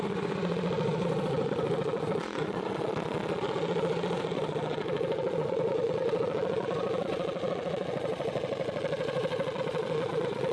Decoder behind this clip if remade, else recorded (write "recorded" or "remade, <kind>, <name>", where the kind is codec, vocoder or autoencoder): remade, vocoder, Vocos